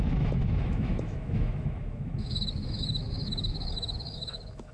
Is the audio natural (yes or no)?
no